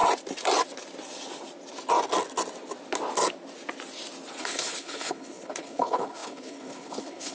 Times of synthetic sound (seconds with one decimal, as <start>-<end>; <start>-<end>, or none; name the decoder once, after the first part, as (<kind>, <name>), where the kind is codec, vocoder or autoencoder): 4.4-7.3 (codec, HILCodec)